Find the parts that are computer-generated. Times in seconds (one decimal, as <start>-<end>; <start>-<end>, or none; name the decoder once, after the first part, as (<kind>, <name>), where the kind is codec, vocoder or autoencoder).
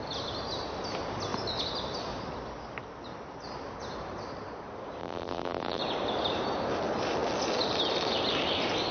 5.0-5.8 (vocoder, BigVGAN v2)